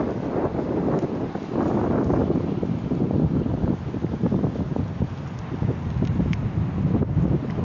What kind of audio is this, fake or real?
real